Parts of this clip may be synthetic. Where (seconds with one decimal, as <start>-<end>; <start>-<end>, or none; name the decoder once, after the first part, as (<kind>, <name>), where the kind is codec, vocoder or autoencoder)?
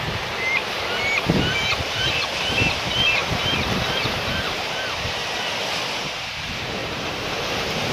0.0-0.6 (vocoder, BigVGAN v2); 1.6-5.2; 6.0-7.9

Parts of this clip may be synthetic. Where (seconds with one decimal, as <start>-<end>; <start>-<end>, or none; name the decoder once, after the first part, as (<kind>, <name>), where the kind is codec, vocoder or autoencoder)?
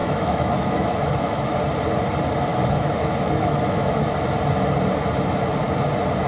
0.0-1.6 (autoencoder, DAC-VAE); 2.5-4.1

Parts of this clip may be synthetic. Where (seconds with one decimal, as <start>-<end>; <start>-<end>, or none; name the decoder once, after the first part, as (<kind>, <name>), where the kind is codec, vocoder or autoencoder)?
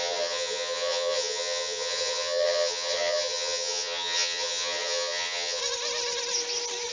0.0-5.6 (vocoder, HiFi-GAN)